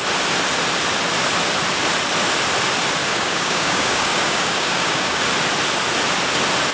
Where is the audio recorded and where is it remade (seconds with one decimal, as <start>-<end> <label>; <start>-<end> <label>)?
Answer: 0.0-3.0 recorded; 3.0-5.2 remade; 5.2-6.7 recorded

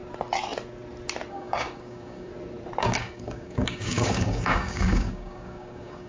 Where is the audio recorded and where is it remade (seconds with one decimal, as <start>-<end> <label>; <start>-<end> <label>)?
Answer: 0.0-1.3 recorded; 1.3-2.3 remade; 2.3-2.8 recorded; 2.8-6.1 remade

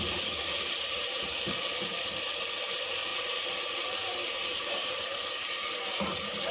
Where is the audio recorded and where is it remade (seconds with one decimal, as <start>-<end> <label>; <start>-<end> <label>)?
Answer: 0.0-6.5 recorded

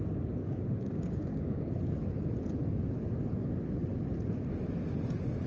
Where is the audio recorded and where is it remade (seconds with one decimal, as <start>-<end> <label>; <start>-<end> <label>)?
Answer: 0.0-0.4 recorded; 0.4-1.7 remade; 1.7-5.5 recorded

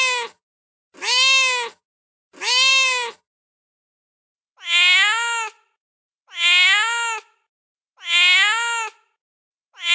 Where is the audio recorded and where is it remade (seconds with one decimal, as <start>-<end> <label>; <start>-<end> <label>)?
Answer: 0.0-9.9 recorded